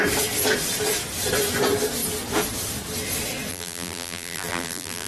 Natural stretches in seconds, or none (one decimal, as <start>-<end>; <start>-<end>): 0.0-3.5